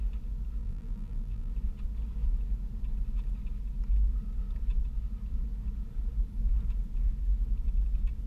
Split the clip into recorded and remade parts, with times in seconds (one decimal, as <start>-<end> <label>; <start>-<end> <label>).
0.0-0.6 recorded; 0.6-1.5 remade; 1.5-8.3 recorded